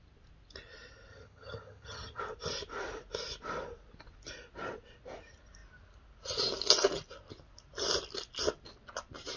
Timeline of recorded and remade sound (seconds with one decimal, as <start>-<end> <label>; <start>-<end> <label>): 0.0-1.1 recorded; 1.1-2.2 remade; 2.2-9.4 recorded